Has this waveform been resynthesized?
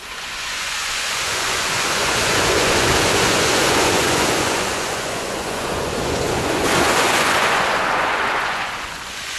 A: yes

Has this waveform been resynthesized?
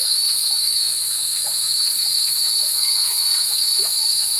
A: yes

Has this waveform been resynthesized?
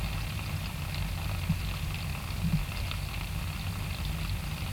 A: no